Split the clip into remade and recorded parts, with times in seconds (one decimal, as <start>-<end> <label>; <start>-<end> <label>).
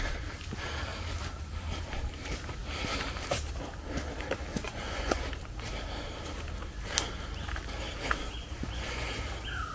0.0-4.5 recorded; 4.5-5.2 remade; 5.2-8.4 recorded; 8.4-9.1 remade; 9.1-9.7 recorded